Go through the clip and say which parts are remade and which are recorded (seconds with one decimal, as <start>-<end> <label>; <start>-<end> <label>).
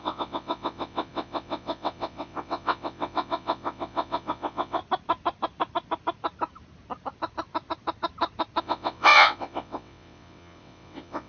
0.0-4.8 remade; 4.8-8.6 recorded; 8.6-11.3 remade